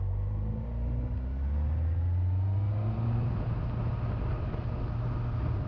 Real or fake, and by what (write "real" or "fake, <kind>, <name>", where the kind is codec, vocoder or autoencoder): real